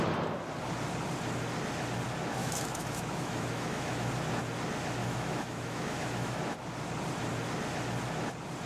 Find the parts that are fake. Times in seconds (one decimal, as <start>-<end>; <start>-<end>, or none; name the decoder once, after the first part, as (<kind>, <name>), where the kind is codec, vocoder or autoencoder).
2.4-4.1 (autoencoder, DAC-VAE); 5.0-6.4